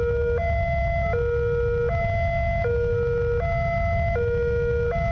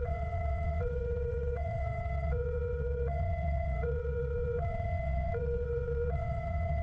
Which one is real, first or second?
first